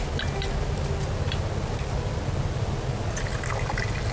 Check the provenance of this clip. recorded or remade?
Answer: recorded